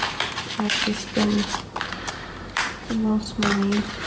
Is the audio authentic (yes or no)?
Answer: no